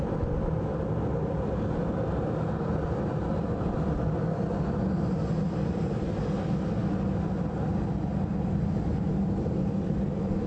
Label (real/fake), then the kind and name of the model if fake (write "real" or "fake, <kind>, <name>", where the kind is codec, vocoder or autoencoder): real